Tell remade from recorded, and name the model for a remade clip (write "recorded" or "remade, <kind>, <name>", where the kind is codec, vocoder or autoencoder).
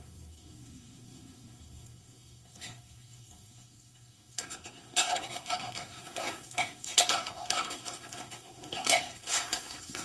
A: remade, codec, SNAC